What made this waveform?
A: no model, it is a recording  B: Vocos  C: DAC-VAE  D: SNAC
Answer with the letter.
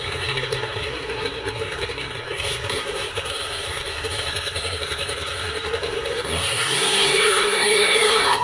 D